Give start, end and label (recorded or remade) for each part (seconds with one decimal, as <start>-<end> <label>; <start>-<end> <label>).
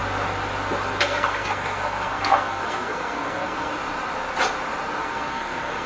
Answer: 0.0-1.0 recorded; 1.0-3.7 remade; 3.7-5.0 recorded; 5.0-5.9 remade